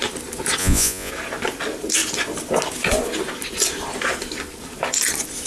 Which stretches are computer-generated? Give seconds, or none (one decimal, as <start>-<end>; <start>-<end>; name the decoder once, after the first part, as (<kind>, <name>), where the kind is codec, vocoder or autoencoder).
0.6-1.1 (vocoder, Vocos)